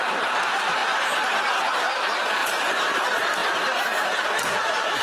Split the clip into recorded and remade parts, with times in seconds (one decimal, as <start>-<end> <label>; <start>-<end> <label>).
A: 0.0-2.4 recorded; 2.4-3.0 remade; 3.0-5.0 recorded